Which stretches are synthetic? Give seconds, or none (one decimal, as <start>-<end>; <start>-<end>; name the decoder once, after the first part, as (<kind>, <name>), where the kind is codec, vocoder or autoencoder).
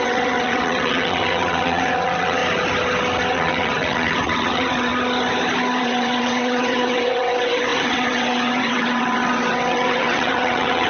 0.0-2.4 (vocoder, WaveNeXt); 3.3-4.9; 5.8-10.9